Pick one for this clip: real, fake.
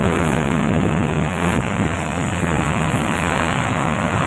fake